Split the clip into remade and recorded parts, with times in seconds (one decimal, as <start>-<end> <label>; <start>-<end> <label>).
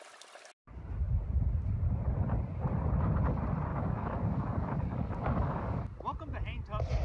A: 0.0-3.7 recorded; 3.7-5.8 remade; 5.8-7.0 recorded